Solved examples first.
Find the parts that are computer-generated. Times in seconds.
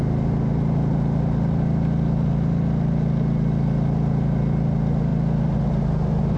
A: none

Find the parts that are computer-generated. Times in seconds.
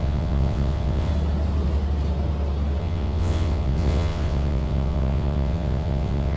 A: 0.0-1.1 (vocoder, WaveNeXt); 2.8-6.4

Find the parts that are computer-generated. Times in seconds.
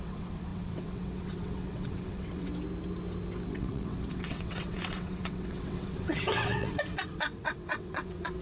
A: 0.0-2.5 (vocoder, WaveNeXt); 3.5-8.4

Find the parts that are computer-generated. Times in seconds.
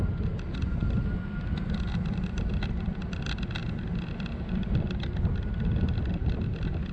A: none